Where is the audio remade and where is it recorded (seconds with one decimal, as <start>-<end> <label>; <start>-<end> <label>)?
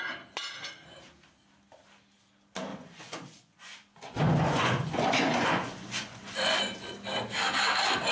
0.0-2.7 recorded; 2.7-6.6 remade; 6.6-8.1 recorded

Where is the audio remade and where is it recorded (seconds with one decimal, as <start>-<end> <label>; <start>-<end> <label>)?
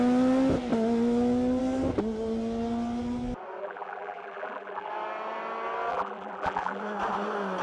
0.0-3.6 recorded; 3.6-4.9 remade; 4.9-5.9 recorded; 5.9-6.8 remade; 6.8-7.6 recorded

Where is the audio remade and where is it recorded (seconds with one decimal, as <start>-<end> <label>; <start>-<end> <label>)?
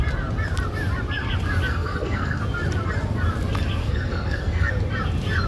0.0-1.7 recorded; 1.7-2.4 remade; 2.4-3.8 recorded; 3.8-4.7 remade; 4.7-5.5 recorded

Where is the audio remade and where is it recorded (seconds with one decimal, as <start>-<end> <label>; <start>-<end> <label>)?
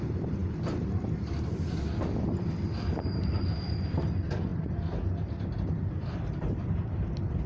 0.0-7.5 recorded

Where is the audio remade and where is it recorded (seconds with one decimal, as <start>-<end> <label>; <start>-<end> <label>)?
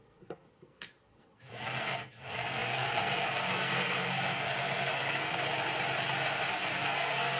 0.0-5.5 remade; 5.5-6.5 recorded; 6.5-7.4 remade